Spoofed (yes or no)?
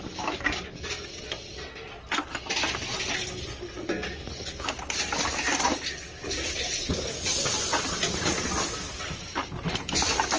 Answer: no